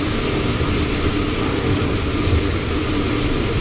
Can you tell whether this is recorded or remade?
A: remade